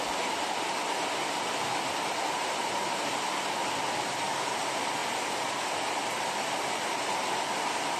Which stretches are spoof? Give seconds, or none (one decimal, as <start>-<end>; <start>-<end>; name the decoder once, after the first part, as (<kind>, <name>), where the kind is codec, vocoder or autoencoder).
none